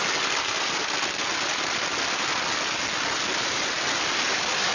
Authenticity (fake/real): real